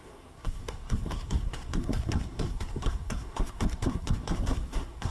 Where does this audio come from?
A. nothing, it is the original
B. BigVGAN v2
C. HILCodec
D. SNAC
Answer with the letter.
D